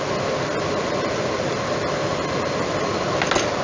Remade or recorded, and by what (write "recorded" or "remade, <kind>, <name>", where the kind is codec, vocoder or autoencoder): recorded